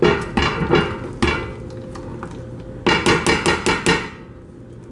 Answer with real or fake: real